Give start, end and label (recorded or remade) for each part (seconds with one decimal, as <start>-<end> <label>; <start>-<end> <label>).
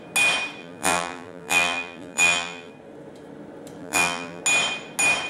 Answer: 0.0-0.6 recorded; 0.6-2.7 remade; 2.7-3.8 recorded; 3.8-4.4 remade; 4.4-5.3 recorded